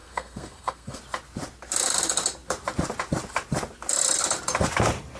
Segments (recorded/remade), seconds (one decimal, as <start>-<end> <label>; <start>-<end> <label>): 0.0-1.0 remade; 1.0-5.2 recorded